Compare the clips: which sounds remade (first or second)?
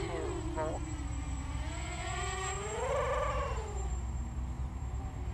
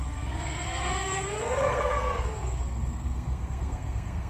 second